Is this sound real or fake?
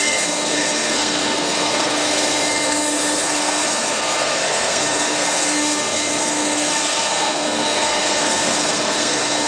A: fake